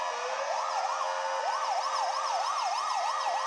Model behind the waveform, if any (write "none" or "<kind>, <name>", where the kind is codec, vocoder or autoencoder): none